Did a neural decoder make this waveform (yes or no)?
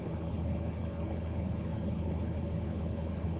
yes